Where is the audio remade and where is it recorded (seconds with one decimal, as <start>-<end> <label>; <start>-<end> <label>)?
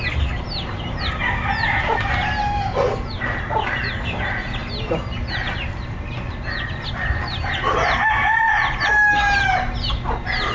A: 0.0-10.5 recorded